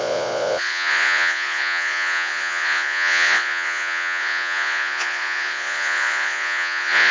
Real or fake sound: fake